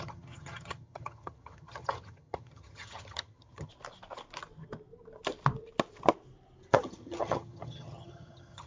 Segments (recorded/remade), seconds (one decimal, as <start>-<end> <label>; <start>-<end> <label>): 0.0-3.7 remade; 3.7-6.7 recorded; 6.7-8.7 remade